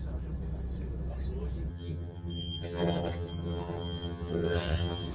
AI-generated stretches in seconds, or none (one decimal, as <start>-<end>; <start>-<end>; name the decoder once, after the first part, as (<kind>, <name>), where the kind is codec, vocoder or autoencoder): 1.7-5.1 (vocoder, HiFi-GAN)